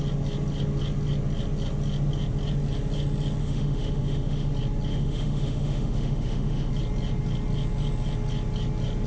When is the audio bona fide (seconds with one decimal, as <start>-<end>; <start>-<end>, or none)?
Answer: 0.0-3.4; 4.5-4.9; 6.7-9.1